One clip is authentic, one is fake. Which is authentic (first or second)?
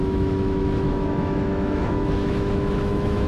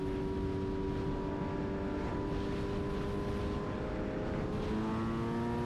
second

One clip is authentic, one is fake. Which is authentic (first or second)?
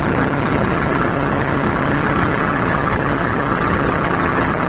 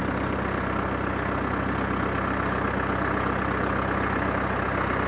second